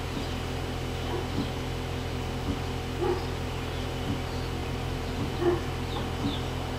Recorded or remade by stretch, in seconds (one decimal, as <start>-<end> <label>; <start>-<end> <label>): 0.0-4.6 recorded; 4.6-5.3 remade; 5.3-6.8 recorded